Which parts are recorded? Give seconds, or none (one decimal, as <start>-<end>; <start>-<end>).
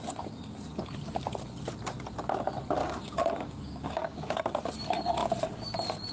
0.0-2.8; 4.4-6.1